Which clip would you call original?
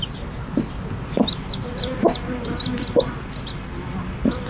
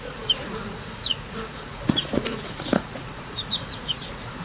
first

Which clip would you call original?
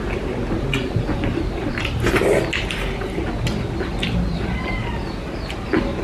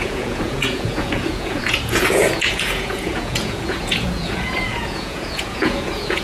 first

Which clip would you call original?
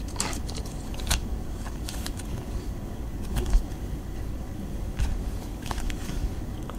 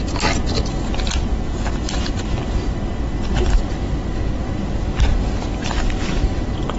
second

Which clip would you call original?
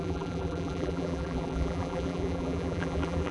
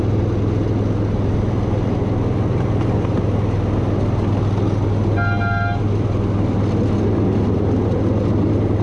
second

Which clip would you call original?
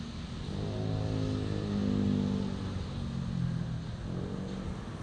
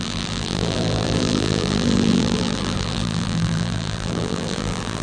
first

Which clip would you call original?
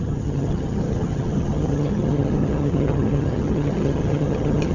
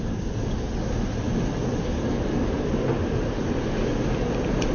second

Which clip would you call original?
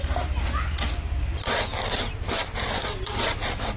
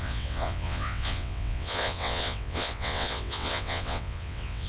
first